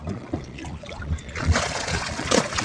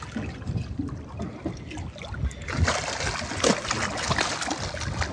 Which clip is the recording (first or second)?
second